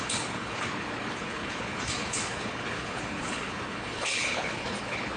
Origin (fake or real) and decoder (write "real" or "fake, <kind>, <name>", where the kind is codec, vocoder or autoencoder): fake, codec, HILCodec